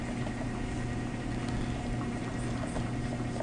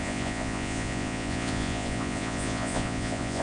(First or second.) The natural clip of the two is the first